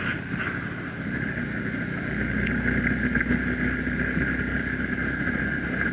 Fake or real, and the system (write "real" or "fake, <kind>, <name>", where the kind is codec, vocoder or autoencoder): real